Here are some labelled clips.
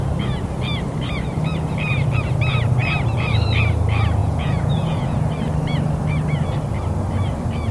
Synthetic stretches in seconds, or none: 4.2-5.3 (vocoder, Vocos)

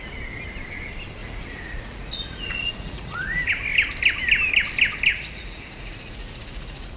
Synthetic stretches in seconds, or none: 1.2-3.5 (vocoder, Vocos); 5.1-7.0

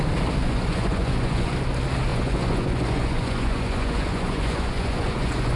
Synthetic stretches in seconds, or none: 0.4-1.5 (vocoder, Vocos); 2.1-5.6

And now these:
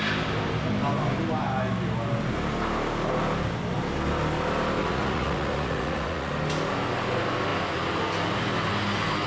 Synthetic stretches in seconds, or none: 4.8-6.3 (vocoder, Vocos)

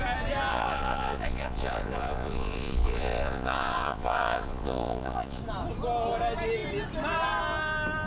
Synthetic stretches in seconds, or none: 0.5-5.4 (vocoder, Vocos)